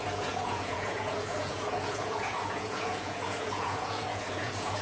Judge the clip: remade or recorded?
remade